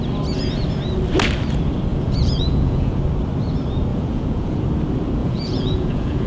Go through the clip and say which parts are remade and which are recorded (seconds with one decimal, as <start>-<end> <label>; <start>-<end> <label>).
0.0-1.9 recorded; 1.9-3.0 remade; 3.0-3.9 recorded; 3.9-4.6 remade; 4.6-5.2 recorded; 5.2-6.3 remade